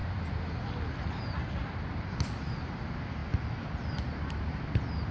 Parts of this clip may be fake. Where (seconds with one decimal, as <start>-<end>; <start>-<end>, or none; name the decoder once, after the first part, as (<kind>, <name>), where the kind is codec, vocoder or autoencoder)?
none